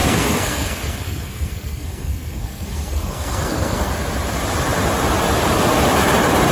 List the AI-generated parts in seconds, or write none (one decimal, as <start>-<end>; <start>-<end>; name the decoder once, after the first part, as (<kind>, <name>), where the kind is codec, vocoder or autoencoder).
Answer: 0.0-3.9 (codec, SNAC)